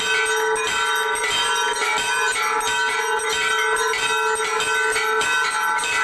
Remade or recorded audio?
recorded